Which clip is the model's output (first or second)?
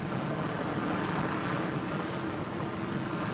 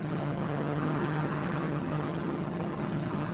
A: second